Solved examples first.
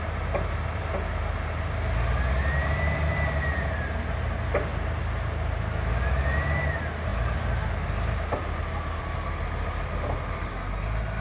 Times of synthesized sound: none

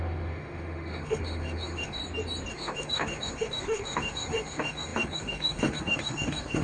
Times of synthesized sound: 0.0-2.0 (autoencoder, DAC-VAE); 2.5-6.6